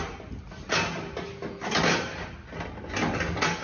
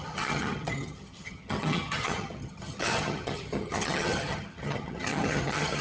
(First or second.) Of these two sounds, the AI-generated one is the second